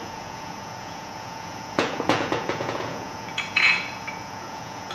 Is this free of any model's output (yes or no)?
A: no